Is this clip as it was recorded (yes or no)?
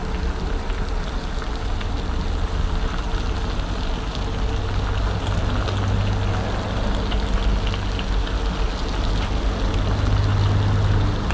yes